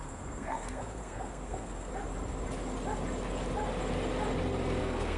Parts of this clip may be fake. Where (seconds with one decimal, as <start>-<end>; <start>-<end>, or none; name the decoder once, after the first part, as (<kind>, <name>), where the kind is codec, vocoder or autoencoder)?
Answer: 0.0-1.9 (codec, SNAC); 4.8-5.2